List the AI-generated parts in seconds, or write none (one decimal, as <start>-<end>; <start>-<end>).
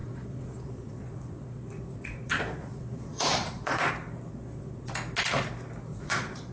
0.0-3.9; 4.3-4.9; 5.9-6.5